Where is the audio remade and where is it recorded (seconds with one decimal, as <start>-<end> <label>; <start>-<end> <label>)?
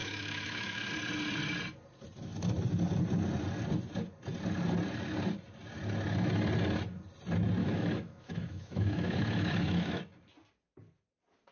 0.0-0.9 remade; 0.9-7.6 recorded; 7.6-10.0 remade; 10.0-11.5 recorded